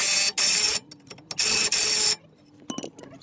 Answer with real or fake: real